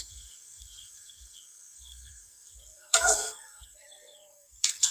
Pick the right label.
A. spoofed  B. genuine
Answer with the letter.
A